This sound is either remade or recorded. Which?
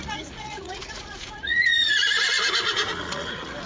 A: remade